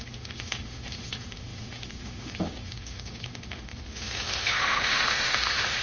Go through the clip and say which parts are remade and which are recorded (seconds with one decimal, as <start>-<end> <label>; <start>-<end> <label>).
0.0-5.8 remade